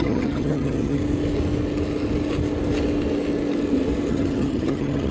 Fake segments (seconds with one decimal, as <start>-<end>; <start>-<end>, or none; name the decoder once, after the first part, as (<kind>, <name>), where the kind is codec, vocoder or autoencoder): 0.0-1.0 (vocoder, HiFi-GAN); 4.1-5.1